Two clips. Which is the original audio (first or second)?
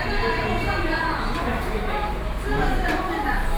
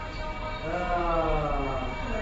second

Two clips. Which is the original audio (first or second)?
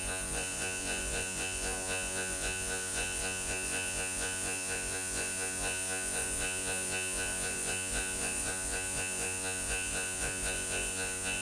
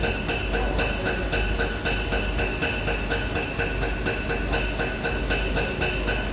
second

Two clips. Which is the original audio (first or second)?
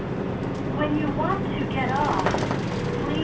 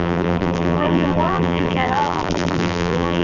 first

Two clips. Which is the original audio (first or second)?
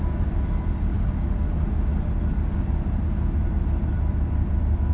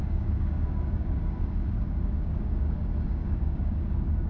first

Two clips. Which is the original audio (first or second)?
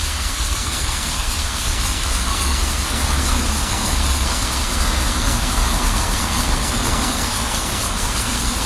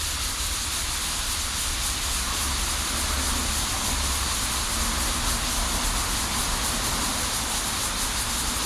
second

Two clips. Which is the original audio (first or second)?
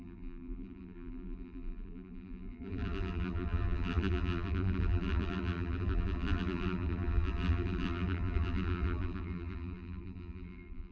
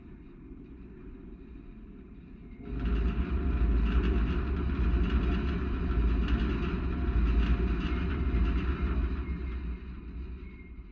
second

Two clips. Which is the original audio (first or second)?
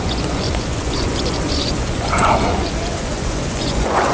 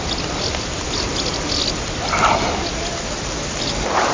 second